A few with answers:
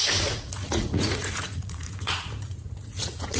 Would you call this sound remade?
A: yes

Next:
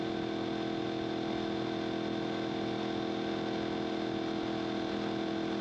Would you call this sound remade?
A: no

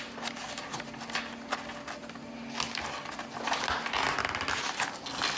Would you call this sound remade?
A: no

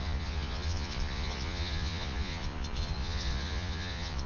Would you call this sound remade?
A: yes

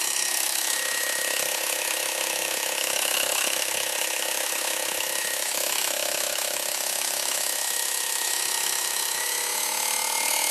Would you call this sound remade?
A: yes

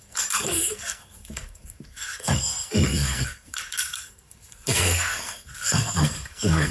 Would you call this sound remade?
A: yes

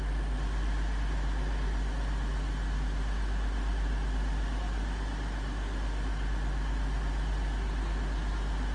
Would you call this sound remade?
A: no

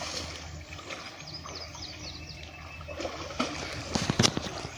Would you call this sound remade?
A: no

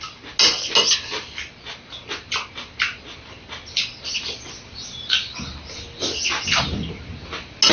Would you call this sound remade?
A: no